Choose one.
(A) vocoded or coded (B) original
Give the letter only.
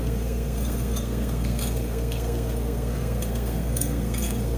A